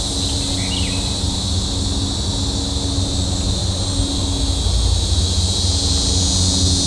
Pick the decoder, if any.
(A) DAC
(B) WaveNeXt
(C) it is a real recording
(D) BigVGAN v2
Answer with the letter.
C